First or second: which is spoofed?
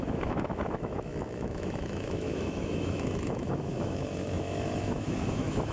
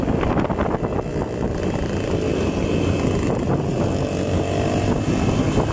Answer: first